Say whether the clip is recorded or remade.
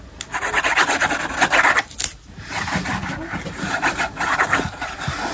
recorded